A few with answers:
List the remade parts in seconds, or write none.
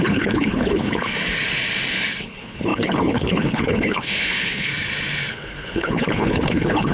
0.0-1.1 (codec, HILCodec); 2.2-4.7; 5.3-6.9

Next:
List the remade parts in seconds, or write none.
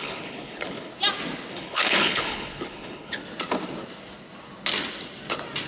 0.0-0.9 (codec, HILCodec); 1.5-3.2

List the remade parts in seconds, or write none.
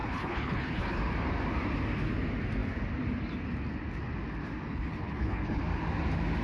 0.0-1.0 (codec, HILCodec); 4.7-5.6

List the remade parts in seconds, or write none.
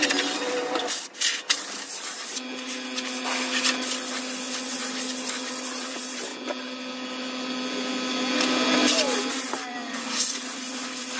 0.0-0.8 (vocoder, BigVGAN v2); 5.8-6.3; 9.2-11.2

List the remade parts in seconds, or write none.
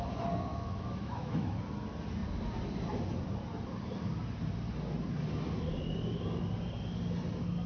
0.5-1.6 (autoencoder, DAC-VAE)